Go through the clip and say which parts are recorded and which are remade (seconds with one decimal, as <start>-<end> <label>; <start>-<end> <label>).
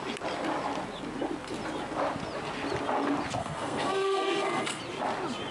0.0-3.4 recorded; 3.4-4.8 remade; 4.8-5.5 recorded